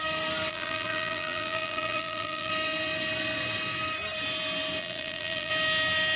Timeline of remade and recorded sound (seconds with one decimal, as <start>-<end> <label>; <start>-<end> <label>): 0.0-0.5 recorded; 0.5-2.5 remade; 2.5-4.8 recorded; 4.8-5.5 remade; 5.5-6.2 recorded

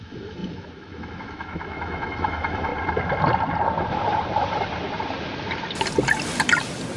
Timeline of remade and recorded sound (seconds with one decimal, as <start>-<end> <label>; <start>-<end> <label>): 0.0-2.7 remade; 2.7-7.0 recorded

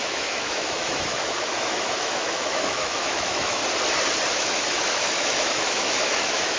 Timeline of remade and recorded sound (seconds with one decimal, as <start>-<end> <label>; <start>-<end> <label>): 0.0-3.6 remade; 3.6-4.3 recorded; 4.3-6.6 remade

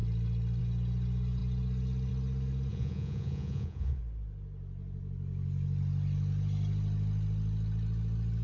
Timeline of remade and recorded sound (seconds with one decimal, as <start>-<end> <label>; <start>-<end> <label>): 0.0-2.7 recorded; 2.7-4.0 remade; 4.0-8.4 recorded

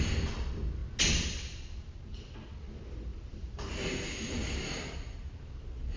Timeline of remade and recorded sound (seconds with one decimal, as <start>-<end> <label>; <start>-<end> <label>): 0.0-3.1 recorded; 3.1-5.4 remade; 5.4-6.0 recorded

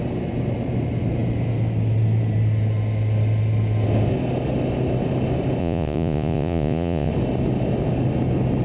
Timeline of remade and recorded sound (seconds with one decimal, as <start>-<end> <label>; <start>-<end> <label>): 0.0-5.6 recorded; 5.6-7.1 remade; 7.1-8.6 recorded